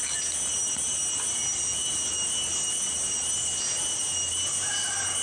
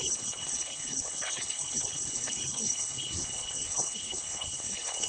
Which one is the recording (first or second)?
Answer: first